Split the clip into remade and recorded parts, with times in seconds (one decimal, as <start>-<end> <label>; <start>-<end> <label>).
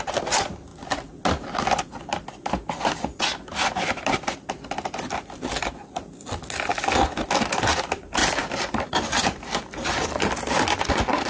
0.0-8.2 recorded; 8.2-10.9 remade; 10.9-11.3 recorded